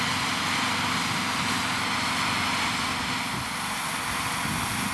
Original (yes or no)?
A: yes